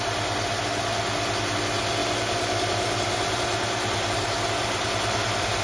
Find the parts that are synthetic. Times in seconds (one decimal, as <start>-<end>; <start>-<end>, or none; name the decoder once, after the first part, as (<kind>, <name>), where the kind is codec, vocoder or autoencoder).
2.0-5.6 (vocoder, BigVGAN v2)